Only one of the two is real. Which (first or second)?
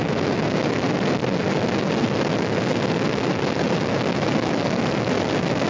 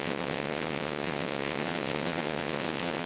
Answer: first